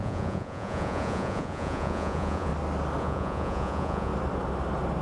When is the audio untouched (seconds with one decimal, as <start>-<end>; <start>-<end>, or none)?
2.5-3.0; 4.1-5.0